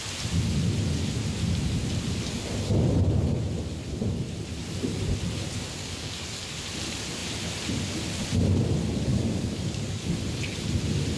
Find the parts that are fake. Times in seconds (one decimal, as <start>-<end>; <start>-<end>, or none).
5.8-6.6; 9.1-10.1